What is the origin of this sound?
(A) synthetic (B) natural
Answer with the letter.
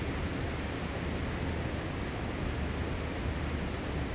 B